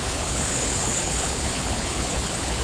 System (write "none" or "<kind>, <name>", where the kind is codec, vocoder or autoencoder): codec, HILCodec